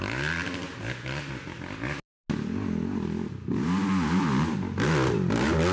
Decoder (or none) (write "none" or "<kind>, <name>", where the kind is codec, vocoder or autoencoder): none